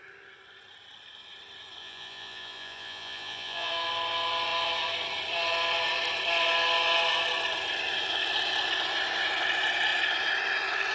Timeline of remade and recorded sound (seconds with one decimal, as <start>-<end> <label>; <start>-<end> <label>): 0.0-1.8 recorded; 1.8-3.7 remade; 3.7-10.9 recorded